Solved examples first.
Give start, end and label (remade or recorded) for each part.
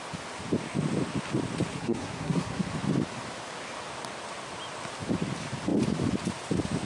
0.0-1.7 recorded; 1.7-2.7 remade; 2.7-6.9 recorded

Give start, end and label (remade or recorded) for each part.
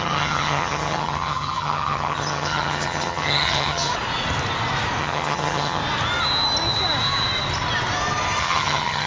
0.0-3.9 remade; 3.9-5.0 recorded; 5.0-5.8 remade; 5.8-8.4 recorded; 8.4-9.1 remade